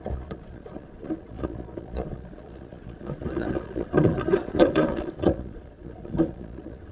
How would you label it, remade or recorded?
remade